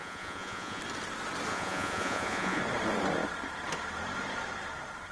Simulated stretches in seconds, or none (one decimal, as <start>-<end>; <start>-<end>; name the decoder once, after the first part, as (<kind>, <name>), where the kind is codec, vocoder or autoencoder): 0.0-0.8 (vocoder, Vocos); 1.5-2.6